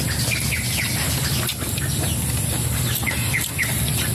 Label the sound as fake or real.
real